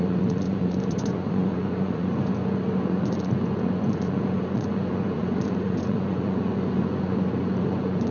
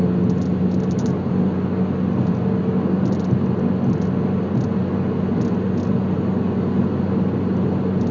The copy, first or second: first